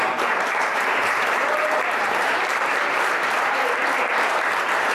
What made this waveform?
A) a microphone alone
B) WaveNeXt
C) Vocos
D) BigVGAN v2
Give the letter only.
D